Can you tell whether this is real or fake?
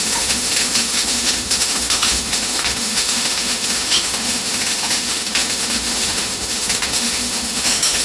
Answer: fake